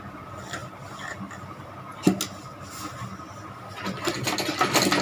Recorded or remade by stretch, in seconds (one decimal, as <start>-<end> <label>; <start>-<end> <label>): 0.0-5.0 recorded